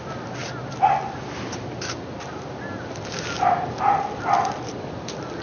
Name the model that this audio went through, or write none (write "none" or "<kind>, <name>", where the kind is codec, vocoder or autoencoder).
none